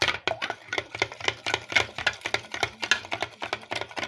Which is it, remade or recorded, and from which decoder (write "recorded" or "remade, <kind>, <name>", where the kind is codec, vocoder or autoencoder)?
recorded